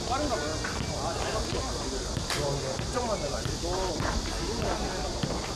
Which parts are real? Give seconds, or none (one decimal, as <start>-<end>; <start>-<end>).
0.0-5.6